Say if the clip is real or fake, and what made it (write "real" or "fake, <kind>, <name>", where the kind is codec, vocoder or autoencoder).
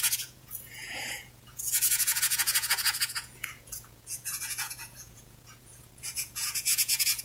fake, vocoder, Vocos